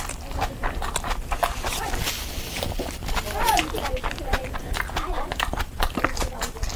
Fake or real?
real